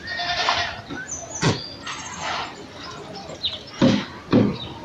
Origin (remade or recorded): recorded